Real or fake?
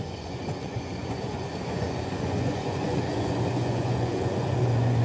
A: fake